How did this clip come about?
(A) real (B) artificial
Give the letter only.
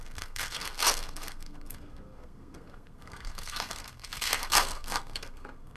B